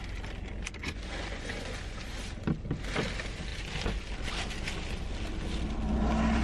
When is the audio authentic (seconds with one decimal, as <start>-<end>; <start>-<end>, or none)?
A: 0.0-0.8; 2.2-6.4